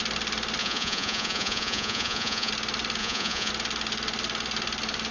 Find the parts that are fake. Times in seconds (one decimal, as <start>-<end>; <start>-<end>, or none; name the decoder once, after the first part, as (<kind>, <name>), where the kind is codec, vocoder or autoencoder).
0.6-2.5 (vocoder, Vocos); 3.0-3.5